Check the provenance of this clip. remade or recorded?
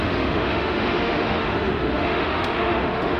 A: remade